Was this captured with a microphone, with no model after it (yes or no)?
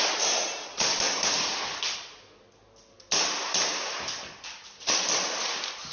yes